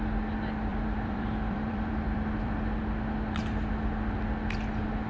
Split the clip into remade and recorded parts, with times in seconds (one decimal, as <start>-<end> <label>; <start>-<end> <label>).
0.0-0.7 recorded; 0.7-2.8 remade; 2.8-5.1 recorded